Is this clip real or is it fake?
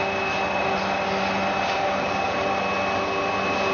real